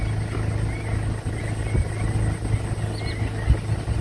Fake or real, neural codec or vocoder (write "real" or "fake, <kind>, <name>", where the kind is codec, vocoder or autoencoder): real